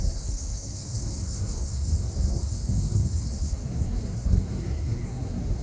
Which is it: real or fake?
fake